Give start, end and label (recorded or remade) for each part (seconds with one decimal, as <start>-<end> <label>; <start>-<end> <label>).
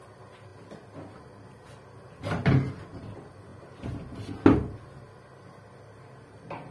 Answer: 0.0-6.7 recorded